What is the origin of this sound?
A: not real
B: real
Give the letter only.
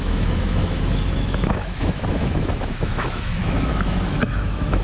A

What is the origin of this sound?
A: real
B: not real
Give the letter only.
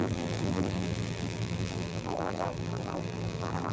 B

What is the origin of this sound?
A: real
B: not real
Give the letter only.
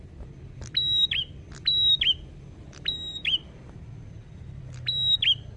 A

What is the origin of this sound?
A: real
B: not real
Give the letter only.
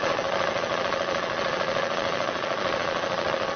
B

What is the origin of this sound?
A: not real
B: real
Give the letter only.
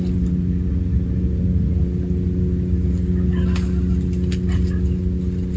B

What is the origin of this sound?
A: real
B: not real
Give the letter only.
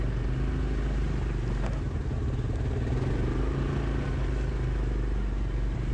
A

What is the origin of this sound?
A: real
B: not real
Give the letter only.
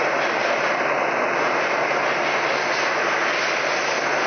A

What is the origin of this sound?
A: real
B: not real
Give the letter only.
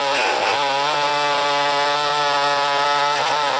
A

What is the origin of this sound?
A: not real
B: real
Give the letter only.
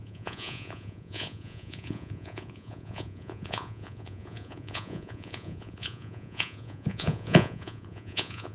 A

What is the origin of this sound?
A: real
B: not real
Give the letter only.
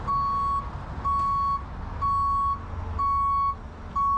A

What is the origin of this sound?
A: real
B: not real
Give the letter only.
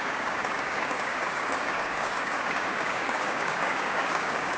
B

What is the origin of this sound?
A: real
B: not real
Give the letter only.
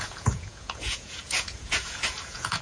B